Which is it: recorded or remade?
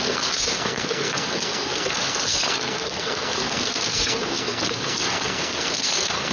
remade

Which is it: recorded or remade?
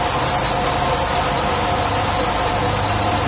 recorded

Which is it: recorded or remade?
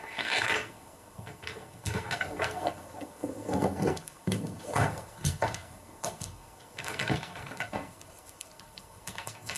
remade